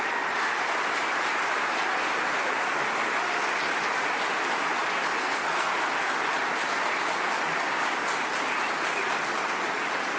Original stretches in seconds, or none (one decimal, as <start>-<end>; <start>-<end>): 0.0-5.2; 5.7-10.2